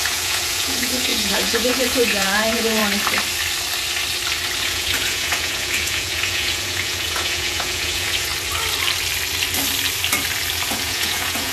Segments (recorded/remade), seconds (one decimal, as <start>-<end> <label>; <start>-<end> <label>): 0.0-2.8 remade; 2.8-4.6 recorded; 4.6-8.3 remade; 8.3-10.7 recorded; 10.7-11.5 remade